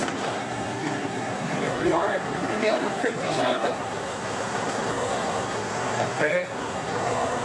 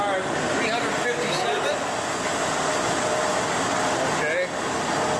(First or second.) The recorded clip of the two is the second